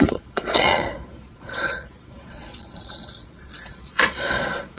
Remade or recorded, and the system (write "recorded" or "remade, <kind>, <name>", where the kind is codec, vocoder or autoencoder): remade, vocoder, Vocos